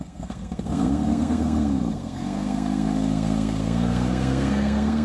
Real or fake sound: fake